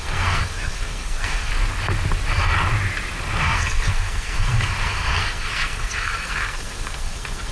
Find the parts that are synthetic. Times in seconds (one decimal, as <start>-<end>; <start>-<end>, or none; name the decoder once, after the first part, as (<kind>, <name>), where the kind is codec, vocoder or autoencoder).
0.0-1.5 (codec, SNAC); 3.4-7.5